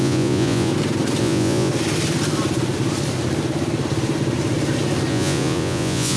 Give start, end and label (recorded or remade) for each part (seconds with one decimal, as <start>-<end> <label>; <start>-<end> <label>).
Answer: 0.0-0.7 remade; 0.7-1.2 recorded; 1.2-1.7 remade; 1.7-5.1 recorded; 5.1-6.2 remade